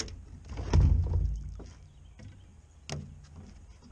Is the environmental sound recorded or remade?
recorded